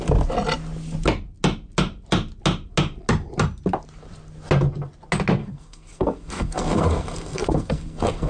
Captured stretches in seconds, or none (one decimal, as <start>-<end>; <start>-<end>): 0.0-5.4